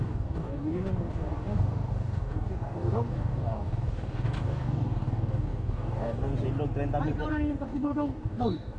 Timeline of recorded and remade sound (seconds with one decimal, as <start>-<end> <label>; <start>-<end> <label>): 0.0-6.3 remade; 6.3-7.3 recorded; 7.3-8.8 remade